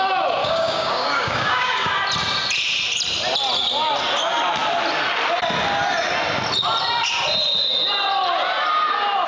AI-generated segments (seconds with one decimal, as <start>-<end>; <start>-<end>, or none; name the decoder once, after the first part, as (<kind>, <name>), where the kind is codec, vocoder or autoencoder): 0.4-1.9 (codec, DAC)